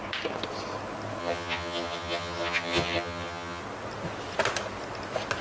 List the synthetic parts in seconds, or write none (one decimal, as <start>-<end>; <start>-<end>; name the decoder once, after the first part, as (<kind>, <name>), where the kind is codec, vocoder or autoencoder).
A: 1.2-3.6 (vocoder, HiFi-GAN)